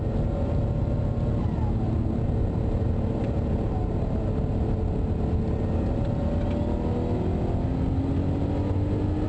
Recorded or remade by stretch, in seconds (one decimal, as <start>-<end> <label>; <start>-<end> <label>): 0.0-2.4 recorded; 2.4-4.2 remade; 4.2-9.3 recorded